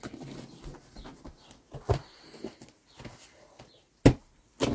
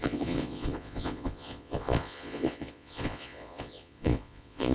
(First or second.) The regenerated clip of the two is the second